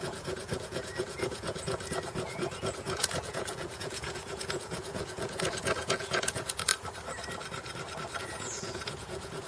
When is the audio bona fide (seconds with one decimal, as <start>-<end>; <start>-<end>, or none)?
6.7-8.2